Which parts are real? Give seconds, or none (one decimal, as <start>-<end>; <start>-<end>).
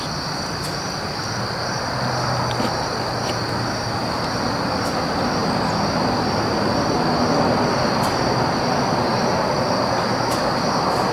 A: 0.0-11.1